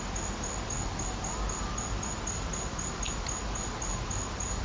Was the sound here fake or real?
real